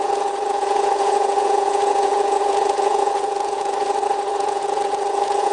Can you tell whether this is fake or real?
fake